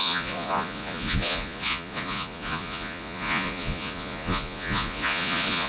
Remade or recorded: remade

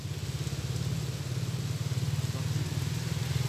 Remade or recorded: recorded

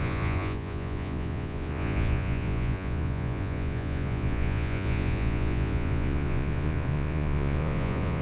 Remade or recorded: remade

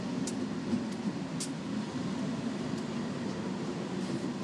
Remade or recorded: recorded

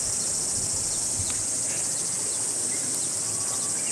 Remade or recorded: recorded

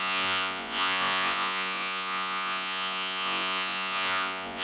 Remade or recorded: remade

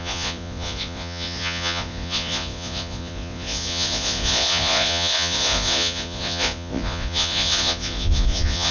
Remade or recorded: remade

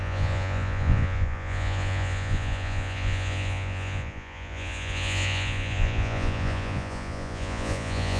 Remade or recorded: remade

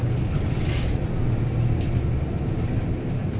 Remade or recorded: recorded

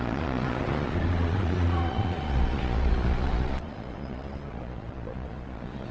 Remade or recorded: remade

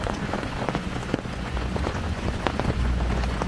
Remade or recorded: remade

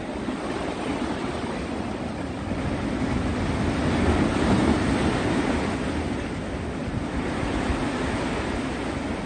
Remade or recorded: recorded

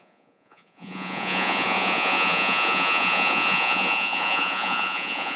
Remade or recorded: remade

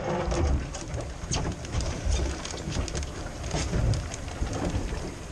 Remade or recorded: recorded